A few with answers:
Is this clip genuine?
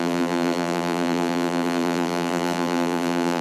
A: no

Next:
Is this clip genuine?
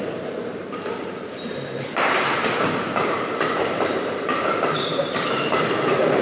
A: no